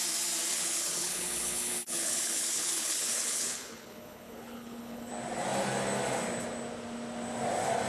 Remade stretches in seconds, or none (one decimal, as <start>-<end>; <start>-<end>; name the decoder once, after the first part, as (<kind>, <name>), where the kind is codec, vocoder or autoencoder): 0.5-5.1 (codec, HILCodec)